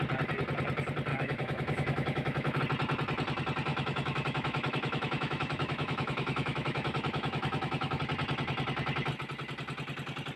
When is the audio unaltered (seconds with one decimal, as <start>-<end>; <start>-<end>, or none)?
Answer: 0.0-1.1; 2.6-3.7; 8.0-10.4